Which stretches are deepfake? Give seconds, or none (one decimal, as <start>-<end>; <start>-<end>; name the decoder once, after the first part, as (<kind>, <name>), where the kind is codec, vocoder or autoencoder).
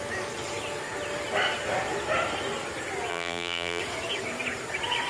3.1-3.8 (vocoder, BigVGAN v2)